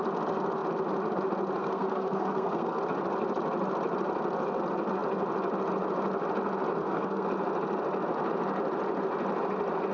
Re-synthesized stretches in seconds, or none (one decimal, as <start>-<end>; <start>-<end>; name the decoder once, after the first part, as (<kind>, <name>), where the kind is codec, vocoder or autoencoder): 1.6-2.8 (codec, SNAC); 6.8-7.3